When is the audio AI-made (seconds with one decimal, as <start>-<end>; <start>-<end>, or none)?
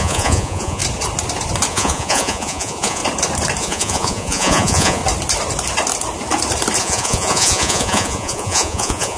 0.0-0.8; 1.7-3.0; 3.6-5.0; 6.8-9.2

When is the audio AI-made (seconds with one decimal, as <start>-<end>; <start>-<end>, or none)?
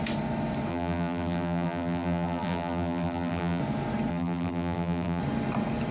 0.7-3.6; 4.1-5.2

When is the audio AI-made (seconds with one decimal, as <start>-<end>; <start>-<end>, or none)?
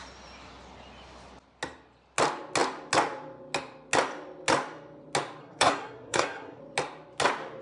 5.4-6.6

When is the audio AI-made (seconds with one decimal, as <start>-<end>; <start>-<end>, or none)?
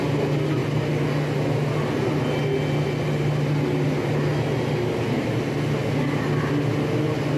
none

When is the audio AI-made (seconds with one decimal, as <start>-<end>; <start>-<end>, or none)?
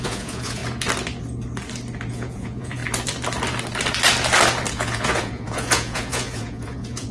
0.0-0.6; 2.1-2.8; 4.7-7.1